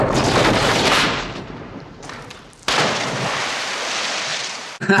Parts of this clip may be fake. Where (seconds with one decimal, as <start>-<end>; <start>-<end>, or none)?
0.6-2.8; 4.3-5.0